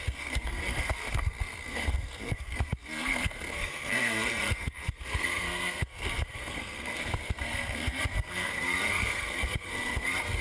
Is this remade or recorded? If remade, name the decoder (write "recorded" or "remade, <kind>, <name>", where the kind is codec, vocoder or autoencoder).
remade, codec, SNAC